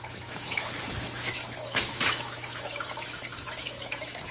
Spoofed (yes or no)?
yes